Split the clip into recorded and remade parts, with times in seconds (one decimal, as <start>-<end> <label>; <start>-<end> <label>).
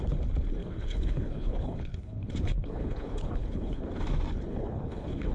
0.0-0.6 recorded; 0.6-3.8 remade; 3.8-4.5 recorded; 4.5-5.3 remade